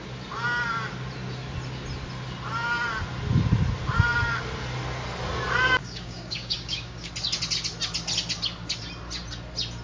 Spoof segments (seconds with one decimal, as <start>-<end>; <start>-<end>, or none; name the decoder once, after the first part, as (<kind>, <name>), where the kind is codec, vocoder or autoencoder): 5.8-7.1 (codec, DAC)